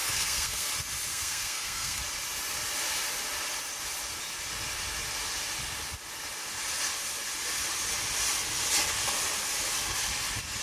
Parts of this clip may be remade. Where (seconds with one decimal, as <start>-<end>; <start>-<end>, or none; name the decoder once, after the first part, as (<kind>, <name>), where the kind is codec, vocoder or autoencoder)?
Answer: 0.0-0.7 (codec, SNAC); 1.1-2.0